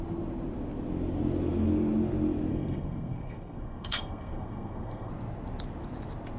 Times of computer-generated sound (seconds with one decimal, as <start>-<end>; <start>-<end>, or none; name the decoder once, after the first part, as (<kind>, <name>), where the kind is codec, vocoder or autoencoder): 2.5-5.1 (codec, SNAC)